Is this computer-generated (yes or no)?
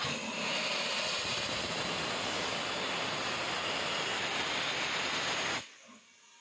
no